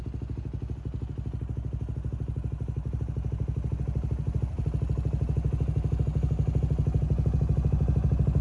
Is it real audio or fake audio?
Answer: real